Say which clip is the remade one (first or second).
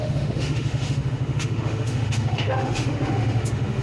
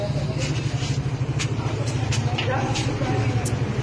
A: first